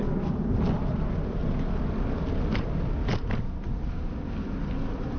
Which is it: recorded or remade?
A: recorded